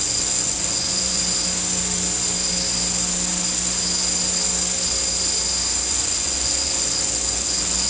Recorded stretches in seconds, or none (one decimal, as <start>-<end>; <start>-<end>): 1.2-5.9